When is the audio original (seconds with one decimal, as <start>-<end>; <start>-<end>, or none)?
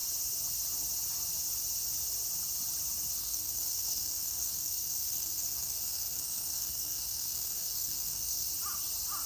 0.0-3.2; 8.5-9.3